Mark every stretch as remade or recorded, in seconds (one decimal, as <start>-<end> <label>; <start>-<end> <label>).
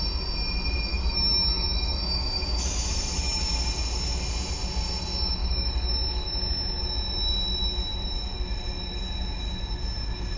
0.0-0.9 recorded; 0.9-3.4 remade; 3.4-5.4 recorded; 5.4-6.8 remade; 6.8-10.4 recorded